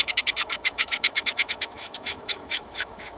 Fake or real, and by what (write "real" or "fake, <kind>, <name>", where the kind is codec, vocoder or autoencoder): fake, autoencoder, DAC-VAE